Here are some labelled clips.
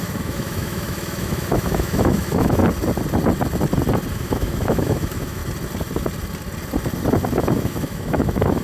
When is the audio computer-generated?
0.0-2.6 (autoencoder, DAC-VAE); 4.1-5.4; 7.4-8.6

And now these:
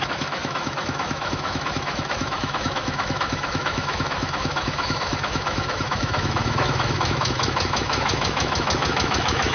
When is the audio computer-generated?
0.0-9.5 (autoencoder, DAC-VAE)

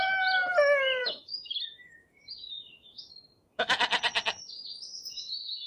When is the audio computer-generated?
1.0-3.8 (autoencoder, DAC-VAE); 4.9-5.7

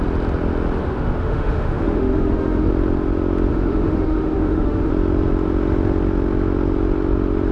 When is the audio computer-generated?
0.8-2.7 (autoencoder, DAC-VAE); 3.5-4.9

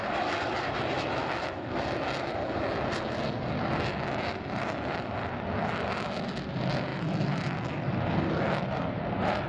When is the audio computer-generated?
1.2-1.7 (autoencoder, DAC-VAE)